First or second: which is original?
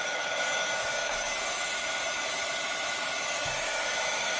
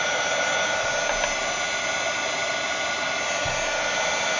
second